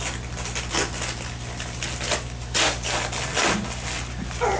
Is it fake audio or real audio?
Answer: real